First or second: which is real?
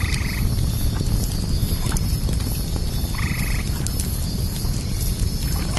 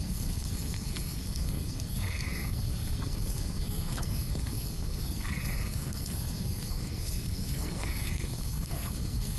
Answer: first